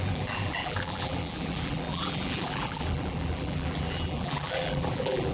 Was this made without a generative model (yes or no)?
no